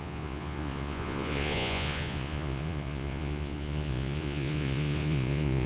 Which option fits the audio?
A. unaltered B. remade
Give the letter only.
B